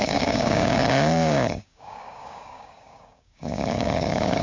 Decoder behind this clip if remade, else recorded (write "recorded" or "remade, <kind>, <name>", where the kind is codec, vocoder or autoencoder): remade, codec, DAC